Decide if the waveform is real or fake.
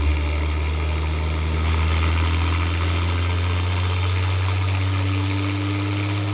real